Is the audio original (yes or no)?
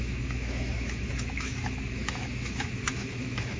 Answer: no